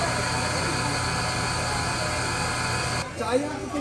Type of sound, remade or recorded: recorded